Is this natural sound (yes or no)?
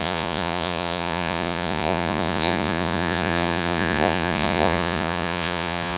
no